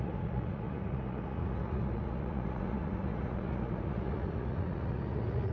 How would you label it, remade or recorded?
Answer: remade